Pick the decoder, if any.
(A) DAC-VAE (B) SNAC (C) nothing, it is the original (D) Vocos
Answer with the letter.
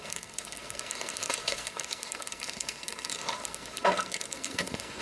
B